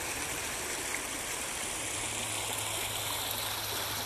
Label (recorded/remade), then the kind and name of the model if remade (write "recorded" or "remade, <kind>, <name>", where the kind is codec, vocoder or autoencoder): recorded